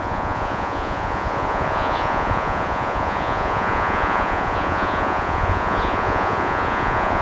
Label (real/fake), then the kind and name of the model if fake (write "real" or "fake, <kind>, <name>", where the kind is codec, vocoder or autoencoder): fake, vocoder, Vocos